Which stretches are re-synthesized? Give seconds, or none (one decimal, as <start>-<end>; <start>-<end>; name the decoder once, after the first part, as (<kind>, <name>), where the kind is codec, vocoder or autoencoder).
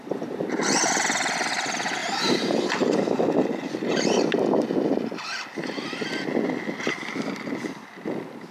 2.0-2.7 (vocoder, BigVGAN v2)